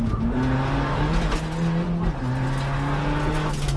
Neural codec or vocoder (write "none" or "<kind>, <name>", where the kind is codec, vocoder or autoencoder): none